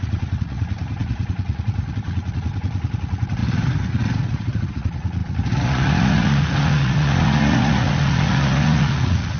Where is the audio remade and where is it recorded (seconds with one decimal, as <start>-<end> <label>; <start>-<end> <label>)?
0.0-9.4 remade